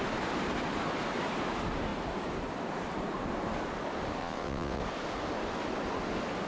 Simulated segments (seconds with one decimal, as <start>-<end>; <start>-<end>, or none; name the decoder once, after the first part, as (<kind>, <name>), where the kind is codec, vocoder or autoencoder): 4.2-4.8 (vocoder, WaveNeXt)